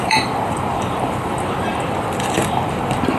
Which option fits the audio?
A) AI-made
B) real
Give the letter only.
A